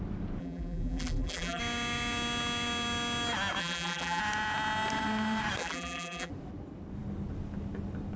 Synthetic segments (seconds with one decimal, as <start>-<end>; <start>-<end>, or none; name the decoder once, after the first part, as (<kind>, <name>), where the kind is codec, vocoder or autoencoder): 0.4-1.6 (vocoder, BigVGAN v2); 3.6-4.2; 5.6-6.3